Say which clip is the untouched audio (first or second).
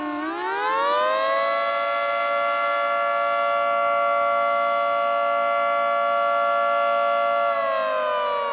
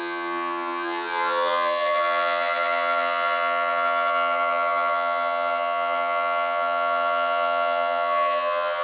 first